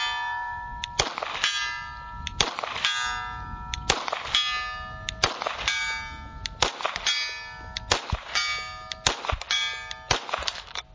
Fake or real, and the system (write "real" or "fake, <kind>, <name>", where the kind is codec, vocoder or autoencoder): real